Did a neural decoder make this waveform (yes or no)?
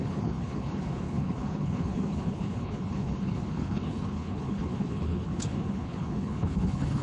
yes